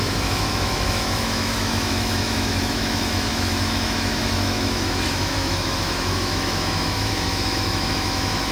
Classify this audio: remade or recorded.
remade